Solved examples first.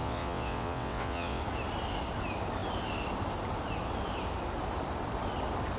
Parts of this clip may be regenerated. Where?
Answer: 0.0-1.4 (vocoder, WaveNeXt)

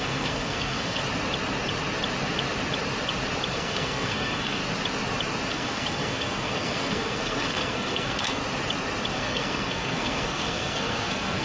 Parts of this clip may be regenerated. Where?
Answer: 0.0-1.0 (codec, SNAC); 3.5-4.6; 5.5-8.4; 9.1-11.4

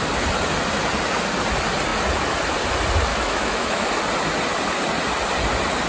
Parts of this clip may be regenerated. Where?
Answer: 3.1-3.9 (autoencoder, DAC-VAE)

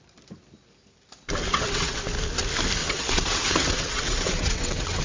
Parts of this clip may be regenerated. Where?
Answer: 1.5-2.0 (vocoder, WaveNeXt); 2.8-5.0